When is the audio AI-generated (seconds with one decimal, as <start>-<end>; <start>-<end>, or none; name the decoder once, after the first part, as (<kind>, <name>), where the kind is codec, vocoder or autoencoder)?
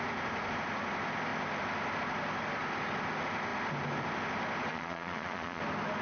4.7-5.6 (vocoder, Vocos)